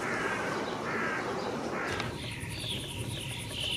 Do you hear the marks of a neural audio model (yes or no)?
yes